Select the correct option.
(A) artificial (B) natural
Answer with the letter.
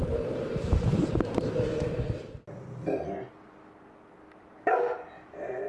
B